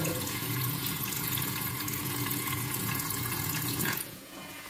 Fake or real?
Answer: fake